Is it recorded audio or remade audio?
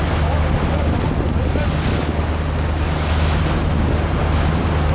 recorded